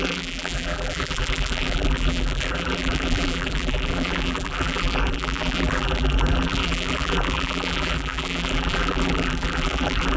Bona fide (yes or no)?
no